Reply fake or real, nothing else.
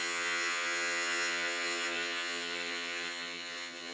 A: fake